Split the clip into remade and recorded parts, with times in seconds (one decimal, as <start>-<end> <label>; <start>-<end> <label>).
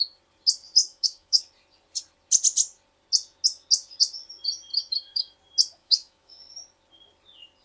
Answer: 0.0-0.8 recorded; 0.8-1.4 remade; 1.4-4.7 recorded; 4.7-5.2 remade; 5.2-5.8 recorded; 5.8-6.4 remade; 6.4-7.6 recorded